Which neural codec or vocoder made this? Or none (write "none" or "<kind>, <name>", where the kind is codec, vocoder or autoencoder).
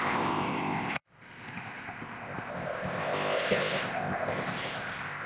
codec, ZipCodec